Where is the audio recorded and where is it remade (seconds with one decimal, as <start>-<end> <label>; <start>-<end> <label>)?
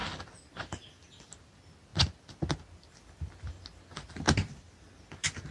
0.0-5.5 recorded